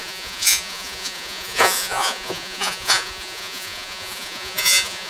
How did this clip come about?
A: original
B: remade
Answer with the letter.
B